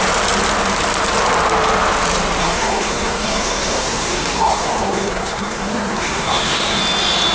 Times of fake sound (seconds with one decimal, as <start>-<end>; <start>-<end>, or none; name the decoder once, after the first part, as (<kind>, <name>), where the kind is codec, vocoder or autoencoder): 2.4-6.8 (codec, SNAC)